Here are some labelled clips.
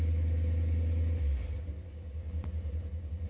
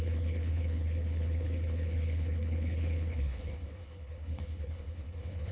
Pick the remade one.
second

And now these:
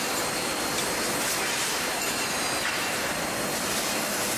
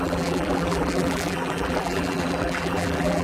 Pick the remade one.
second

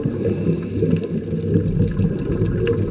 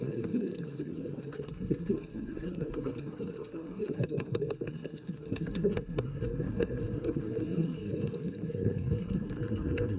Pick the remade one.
second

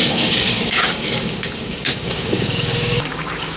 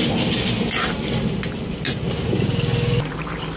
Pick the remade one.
first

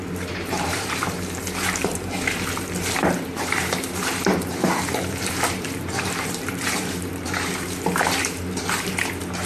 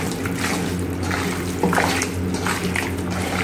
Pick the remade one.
first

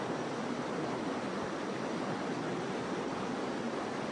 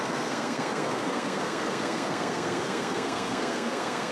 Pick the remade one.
second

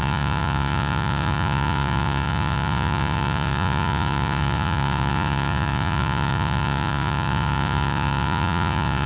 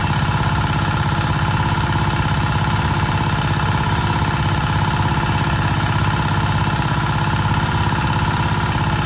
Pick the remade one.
first